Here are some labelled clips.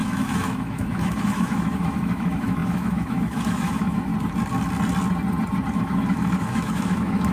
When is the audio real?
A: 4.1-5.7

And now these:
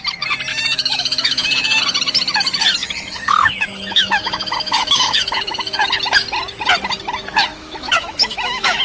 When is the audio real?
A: 0.0-0.5; 1.8-2.8; 5.9-7.5

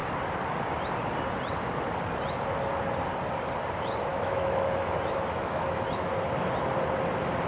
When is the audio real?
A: 0.0-4.1; 6.1-7.5

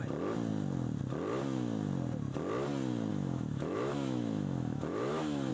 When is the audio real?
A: 0.0-3.1